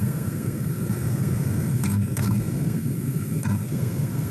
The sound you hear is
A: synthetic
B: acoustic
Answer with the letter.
A